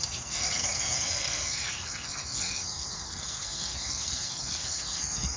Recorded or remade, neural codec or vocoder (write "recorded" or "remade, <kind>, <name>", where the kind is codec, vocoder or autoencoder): remade, codec, SNAC